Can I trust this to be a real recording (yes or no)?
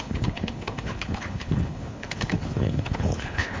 no